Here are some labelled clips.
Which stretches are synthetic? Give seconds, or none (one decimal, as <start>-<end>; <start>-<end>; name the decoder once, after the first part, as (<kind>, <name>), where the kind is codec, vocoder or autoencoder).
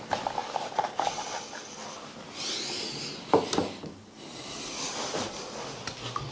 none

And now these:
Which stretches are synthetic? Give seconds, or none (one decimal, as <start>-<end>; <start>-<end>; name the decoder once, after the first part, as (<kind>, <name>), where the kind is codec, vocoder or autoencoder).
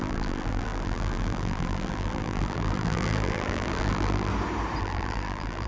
0.0-4.3 (vocoder, BigVGAN v2); 4.8-5.7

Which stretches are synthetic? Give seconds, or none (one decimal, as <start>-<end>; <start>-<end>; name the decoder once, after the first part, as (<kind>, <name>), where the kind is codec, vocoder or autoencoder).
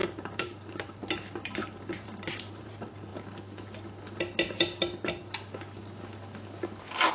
0.0-3.1 (vocoder, BigVGAN v2)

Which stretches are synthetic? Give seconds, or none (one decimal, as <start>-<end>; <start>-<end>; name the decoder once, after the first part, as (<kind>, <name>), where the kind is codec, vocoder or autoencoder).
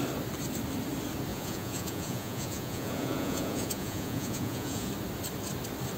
1.3-4.9 (vocoder, Vocos)